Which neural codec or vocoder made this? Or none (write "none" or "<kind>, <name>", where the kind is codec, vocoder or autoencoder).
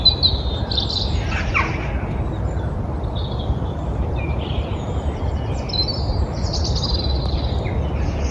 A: none